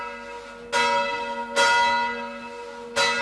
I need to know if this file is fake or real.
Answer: real